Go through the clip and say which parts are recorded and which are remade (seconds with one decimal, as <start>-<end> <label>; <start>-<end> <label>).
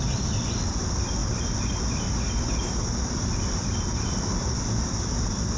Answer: 0.0-5.6 recorded